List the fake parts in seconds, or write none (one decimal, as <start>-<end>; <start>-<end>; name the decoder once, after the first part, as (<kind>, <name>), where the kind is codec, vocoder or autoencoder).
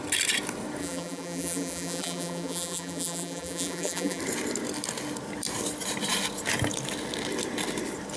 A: 0.8-4.2 (vocoder, BigVGAN v2)